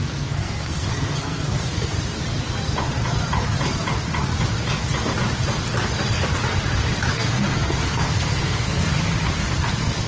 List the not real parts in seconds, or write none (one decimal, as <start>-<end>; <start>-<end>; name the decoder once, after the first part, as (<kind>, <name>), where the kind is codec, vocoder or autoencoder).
0.0-1.9 (codec, SNAC); 7.1-8.9; 9.7-10.1